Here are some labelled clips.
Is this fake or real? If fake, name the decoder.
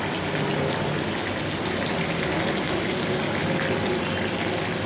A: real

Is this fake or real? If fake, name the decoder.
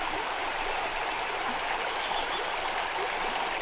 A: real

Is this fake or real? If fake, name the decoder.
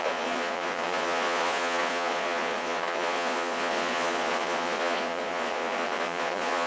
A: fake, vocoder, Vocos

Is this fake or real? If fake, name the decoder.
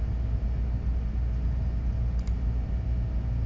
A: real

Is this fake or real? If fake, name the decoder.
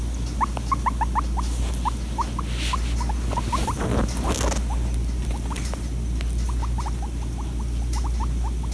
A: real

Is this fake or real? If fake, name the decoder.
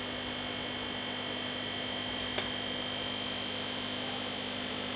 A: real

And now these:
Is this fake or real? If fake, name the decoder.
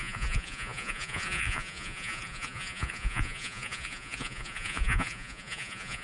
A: fake, vocoder, Vocos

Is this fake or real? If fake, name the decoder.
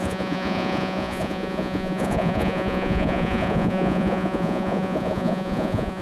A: fake, vocoder, Vocos